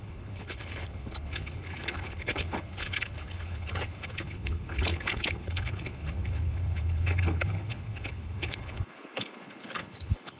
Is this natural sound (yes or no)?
no